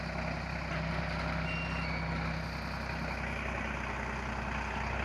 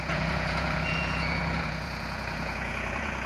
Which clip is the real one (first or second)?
first